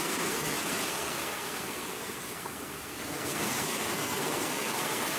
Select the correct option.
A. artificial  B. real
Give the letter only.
A